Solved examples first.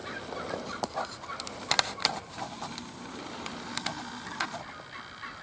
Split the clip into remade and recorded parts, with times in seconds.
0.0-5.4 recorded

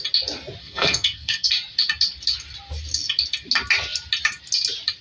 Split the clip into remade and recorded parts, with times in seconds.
0.0-0.6 recorded; 0.6-1.5 remade; 1.5-5.0 recorded

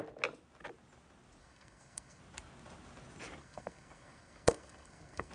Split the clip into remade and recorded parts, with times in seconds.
0.0-1.4 recorded; 1.4-2.2 remade; 2.2-3.4 recorded; 3.4-5.3 remade

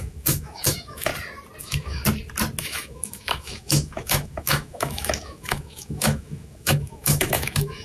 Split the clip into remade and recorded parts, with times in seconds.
0.0-1.1 remade; 1.1-1.6 recorded; 1.6-2.0 remade; 2.0-2.6 recorded; 2.6-7.8 remade

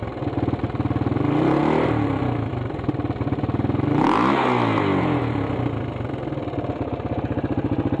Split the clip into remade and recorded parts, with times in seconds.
0.0-8.0 recorded

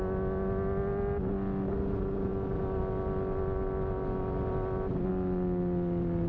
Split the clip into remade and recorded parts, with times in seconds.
0.0-6.3 recorded

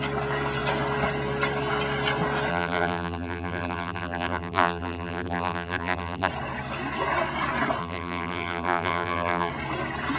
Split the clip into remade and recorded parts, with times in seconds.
0.0-2.5 recorded; 2.5-6.3 remade; 6.3-7.8 recorded; 7.8-9.5 remade; 9.5-10.2 recorded

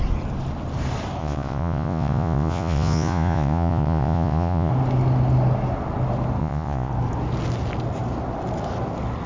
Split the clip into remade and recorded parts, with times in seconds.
0.0-1.2 recorded; 1.2-4.7 remade; 4.7-6.4 recorded; 6.4-6.9 remade; 6.9-9.3 recorded